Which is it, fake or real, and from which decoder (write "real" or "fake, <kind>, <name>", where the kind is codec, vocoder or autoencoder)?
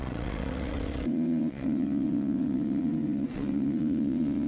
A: fake, vocoder, WaveNeXt